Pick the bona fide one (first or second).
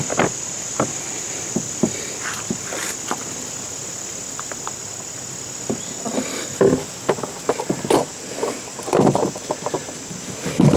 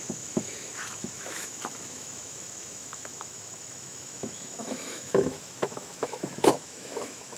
first